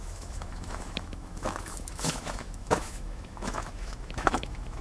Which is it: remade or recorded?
remade